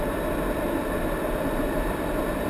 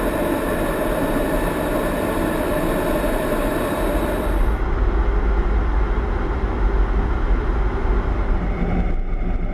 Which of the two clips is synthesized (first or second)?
first